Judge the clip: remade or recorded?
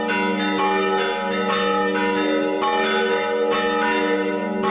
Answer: recorded